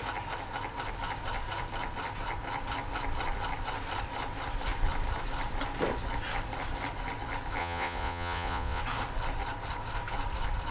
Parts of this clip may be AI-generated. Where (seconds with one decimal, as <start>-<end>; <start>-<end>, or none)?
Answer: 7.6-8.8